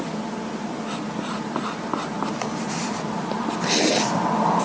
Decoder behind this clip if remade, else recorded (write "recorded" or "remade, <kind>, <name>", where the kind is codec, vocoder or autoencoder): recorded